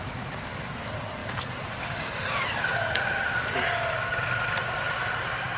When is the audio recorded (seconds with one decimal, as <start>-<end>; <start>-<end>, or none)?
0.0-5.6